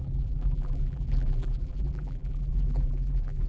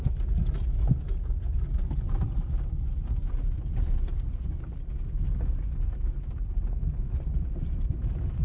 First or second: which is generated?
first